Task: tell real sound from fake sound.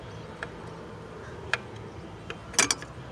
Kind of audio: real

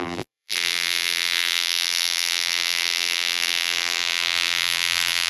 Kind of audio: fake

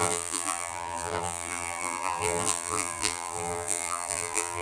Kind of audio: fake